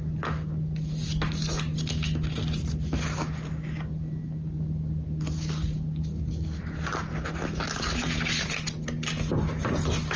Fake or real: real